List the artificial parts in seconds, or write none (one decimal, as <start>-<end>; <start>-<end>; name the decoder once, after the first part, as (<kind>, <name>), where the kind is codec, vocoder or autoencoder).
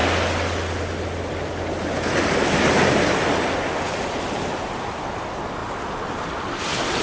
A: none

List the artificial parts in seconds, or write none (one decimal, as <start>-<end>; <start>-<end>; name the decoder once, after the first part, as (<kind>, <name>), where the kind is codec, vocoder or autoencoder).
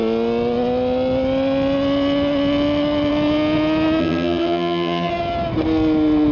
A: 4.0-5.1 (vocoder, HiFi-GAN)